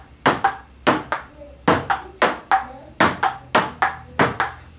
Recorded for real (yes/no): yes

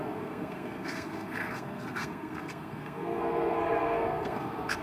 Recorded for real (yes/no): no